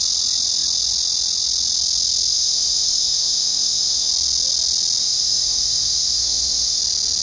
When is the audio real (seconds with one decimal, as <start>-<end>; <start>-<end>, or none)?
0.0-2.3; 4.1-5.0; 6.8-7.2